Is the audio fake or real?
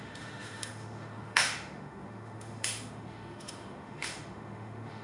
fake